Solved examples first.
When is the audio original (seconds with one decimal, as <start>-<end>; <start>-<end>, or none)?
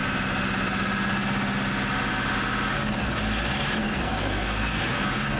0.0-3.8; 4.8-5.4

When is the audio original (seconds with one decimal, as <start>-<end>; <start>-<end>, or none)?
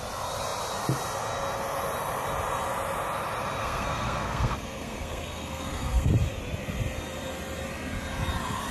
0.0-3.6; 6.1-8.7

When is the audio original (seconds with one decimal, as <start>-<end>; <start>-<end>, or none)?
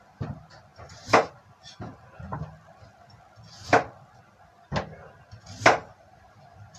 0.0-0.7; 1.3-6.8